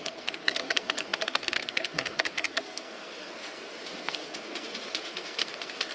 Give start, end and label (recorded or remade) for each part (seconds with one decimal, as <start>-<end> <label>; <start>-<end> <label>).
0.0-5.9 remade